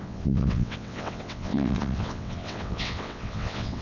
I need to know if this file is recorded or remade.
remade